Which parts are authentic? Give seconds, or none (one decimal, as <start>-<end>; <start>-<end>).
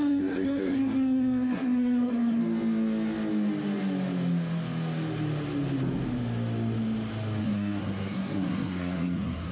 2.4-7.4